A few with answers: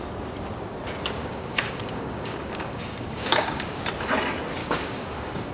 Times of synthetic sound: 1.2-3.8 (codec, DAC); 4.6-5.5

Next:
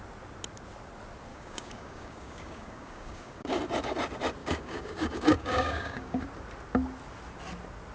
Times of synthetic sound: 1.3-3.6 (codec, DAC); 4.4-6.2